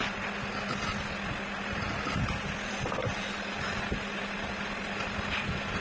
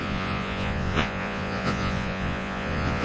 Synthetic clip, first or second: second